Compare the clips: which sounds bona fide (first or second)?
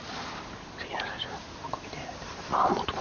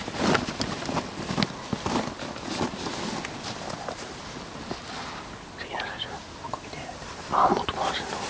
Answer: second